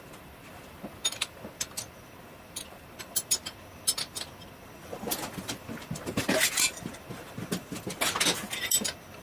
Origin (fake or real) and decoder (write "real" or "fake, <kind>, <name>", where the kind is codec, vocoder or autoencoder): real